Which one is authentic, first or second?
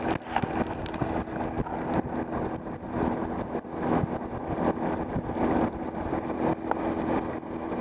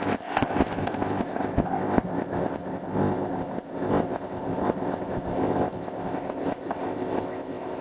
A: first